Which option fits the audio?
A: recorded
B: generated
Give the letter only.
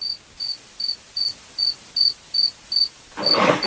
A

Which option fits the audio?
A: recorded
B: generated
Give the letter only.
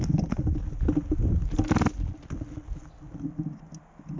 A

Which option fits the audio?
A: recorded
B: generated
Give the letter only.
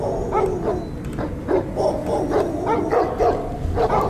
A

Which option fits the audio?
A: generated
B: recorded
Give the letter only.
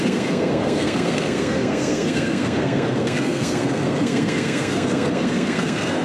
A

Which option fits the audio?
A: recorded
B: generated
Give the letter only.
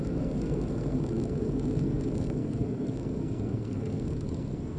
B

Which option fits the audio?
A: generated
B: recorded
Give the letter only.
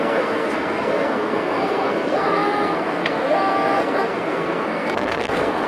A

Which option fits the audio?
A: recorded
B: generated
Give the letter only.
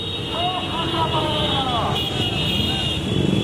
A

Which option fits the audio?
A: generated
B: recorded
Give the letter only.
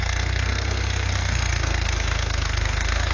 A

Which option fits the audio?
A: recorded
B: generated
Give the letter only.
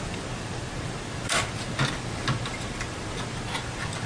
A